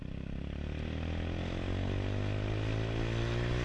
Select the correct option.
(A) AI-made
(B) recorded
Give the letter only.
B